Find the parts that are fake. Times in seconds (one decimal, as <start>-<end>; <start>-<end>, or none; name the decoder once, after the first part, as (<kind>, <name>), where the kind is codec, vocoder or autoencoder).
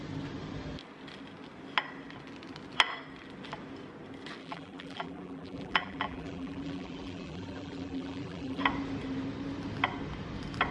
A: 4.4-8.6 (vocoder, BigVGAN v2)